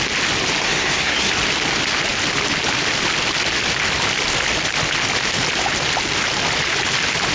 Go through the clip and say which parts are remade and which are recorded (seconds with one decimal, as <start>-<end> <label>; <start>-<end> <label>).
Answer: 0.0-0.6 recorded; 0.6-1.3 remade; 1.3-7.3 recorded